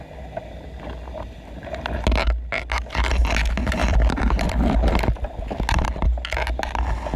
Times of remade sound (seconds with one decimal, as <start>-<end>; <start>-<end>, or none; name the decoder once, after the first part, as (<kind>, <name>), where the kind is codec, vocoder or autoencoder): 3.8-4.8 (vocoder, BigVGAN v2)